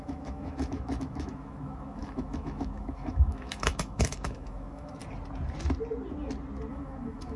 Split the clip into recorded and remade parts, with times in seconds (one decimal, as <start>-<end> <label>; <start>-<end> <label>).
0.0-5.0 remade; 5.0-6.7 recorded; 6.7-7.4 remade

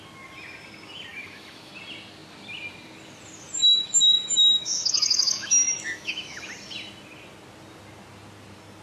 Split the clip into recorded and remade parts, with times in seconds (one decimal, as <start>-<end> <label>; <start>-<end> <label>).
0.0-1.1 recorded; 1.1-1.7 remade; 1.7-3.6 recorded; 3.6-6.5 remade; 6.5-8.8 recorded

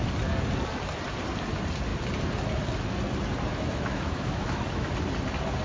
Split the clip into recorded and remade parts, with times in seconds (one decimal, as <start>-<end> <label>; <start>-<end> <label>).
0.0-3.5 recorded; 3.5-4.9 remade; 4.9-5.6 recorded